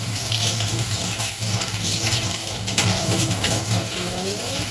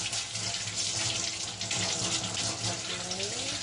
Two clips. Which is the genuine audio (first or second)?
second